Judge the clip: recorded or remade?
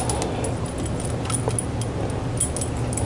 recorded